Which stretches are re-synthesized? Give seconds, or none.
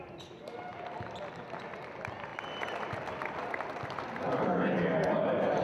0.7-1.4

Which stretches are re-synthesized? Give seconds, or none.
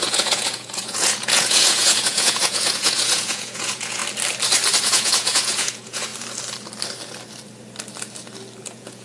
0.0-4.0; 4.8-6.1; 8.6-9.0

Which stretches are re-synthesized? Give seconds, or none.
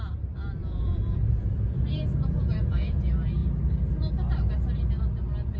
0.6-3.0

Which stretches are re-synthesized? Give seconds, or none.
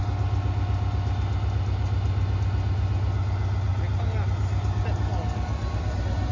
none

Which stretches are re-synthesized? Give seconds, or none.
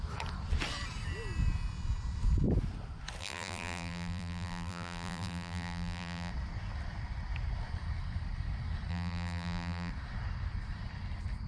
3.2-6.3; 8.9-9.9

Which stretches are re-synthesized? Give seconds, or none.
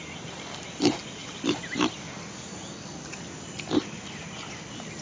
none